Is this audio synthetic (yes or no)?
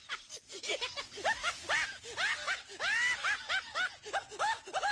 no